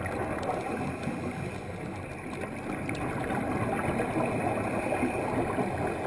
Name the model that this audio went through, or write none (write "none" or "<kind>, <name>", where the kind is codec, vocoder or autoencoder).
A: none